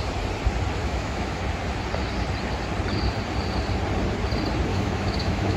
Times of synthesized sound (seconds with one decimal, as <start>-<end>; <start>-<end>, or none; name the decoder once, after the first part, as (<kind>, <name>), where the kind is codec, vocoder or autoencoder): 0.8-1.4 (autoencoder, DAC-VAE); 4.7-5.6